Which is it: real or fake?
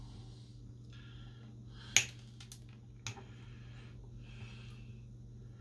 real